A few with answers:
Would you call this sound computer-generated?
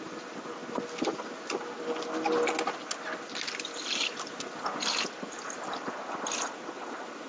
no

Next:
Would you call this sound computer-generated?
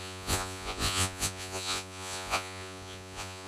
yes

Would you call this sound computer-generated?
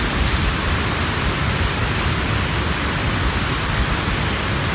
no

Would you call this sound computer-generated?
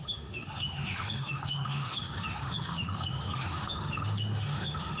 yes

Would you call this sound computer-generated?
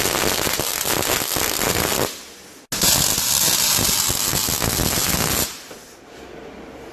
no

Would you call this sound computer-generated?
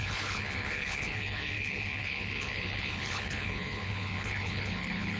yes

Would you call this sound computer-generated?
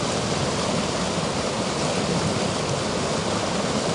no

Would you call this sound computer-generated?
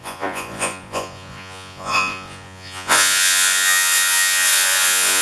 yes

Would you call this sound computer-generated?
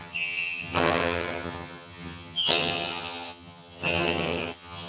yes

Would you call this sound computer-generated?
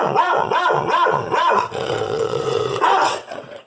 yes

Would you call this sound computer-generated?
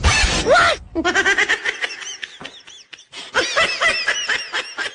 no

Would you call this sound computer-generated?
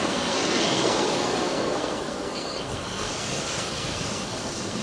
yes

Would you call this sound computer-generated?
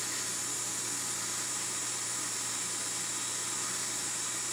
no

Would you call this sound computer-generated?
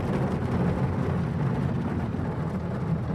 no